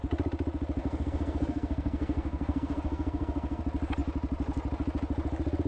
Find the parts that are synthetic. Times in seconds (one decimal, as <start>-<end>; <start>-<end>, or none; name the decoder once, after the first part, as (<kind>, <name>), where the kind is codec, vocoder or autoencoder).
0.8-3.6 (codec, SNAC)